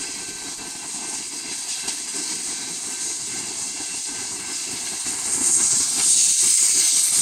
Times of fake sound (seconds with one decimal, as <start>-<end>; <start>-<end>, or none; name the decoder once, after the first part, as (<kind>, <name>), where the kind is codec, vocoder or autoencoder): 2.1-4.6 (vocoder, BigVGAN v2); 6.2-6.7